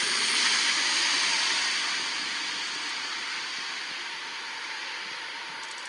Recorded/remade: recorded